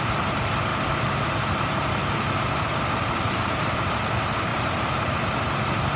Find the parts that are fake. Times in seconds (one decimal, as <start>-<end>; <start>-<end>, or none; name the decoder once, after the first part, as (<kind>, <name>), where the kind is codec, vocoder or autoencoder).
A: 4.5-5.1 (vocoder, BigVGAN v2)